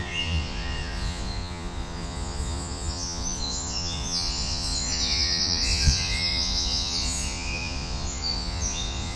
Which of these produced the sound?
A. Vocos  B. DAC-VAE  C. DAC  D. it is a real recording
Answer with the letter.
A